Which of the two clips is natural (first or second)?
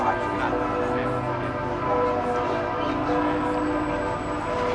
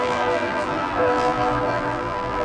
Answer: first